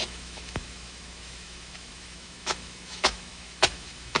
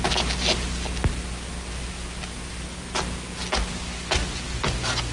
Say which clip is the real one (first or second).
second